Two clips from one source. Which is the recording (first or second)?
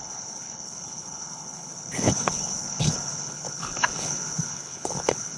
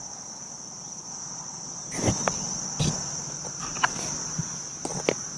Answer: second